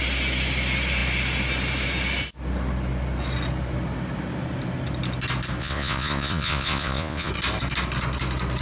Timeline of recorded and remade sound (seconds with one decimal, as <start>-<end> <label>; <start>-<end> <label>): 0.0-5.6 recorded; 5.6-7.3 remade; 7.3-8.6 recorded